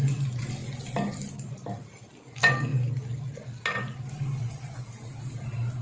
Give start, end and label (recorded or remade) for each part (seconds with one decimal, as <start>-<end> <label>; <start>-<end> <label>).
0.0-5.8 recorded